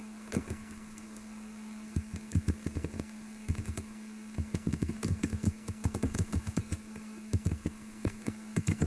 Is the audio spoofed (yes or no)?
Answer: yes